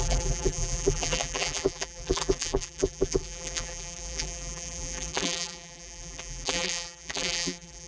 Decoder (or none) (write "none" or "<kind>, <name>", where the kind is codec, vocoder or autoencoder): vocoder, BigVGAN v2